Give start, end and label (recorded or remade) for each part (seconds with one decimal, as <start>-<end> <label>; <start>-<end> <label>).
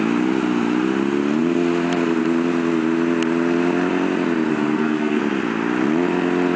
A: 0.0-4.5 recorded; 4.5-5.2 remade; 5.2-6.6 recorded